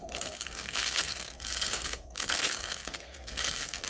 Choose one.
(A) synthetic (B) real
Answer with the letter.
A